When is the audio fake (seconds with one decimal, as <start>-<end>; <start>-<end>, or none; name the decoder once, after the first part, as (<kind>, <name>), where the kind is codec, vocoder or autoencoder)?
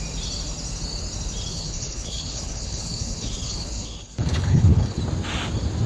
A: 1.5-5.0 (codec, HILCodec)